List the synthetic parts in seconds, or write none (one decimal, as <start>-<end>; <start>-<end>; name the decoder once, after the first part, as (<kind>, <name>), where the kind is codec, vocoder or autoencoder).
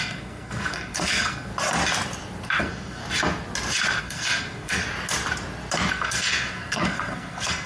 0.0-1.5 (codec, SNAC); 2.6-3.0; 4.0-4.8; 5.9-7.7